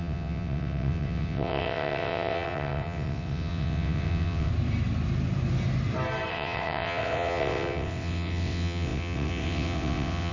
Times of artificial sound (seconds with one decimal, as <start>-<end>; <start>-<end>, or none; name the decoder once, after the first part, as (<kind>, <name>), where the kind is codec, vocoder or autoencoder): 0.0-4.5 (vocoder, WaveNeXt); 6.3-10.3